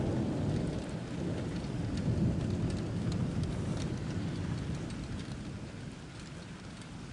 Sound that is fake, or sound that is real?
real